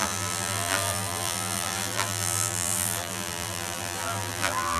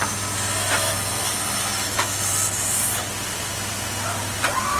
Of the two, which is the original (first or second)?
second